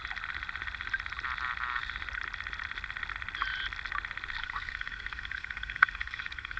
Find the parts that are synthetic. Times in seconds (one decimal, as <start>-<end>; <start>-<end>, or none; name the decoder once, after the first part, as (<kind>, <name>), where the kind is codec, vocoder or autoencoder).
4.4-6.6 (codec, SNAC)